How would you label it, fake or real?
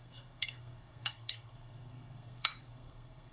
fake